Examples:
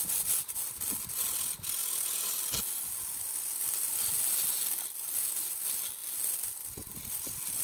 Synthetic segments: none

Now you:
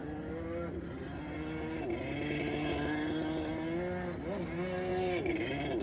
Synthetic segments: none

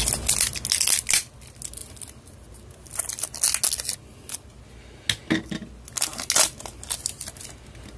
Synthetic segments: none

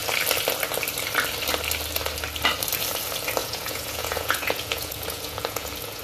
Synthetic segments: 3.4-6.0

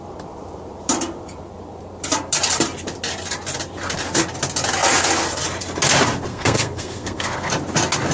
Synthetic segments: 6.3-7.5